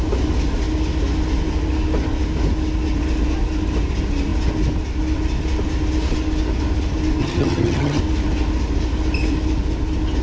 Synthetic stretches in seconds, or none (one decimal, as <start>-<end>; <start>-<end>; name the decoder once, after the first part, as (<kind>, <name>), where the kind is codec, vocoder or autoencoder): 7.2-8.0 (vocoder, HiFi-GAN)